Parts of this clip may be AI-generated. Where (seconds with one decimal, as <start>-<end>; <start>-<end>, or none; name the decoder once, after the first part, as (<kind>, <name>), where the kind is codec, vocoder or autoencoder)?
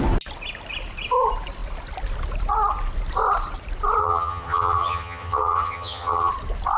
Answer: 4.0-6.3 (vocoder, HiFi-GAN)